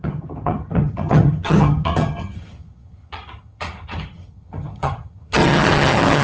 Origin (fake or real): fake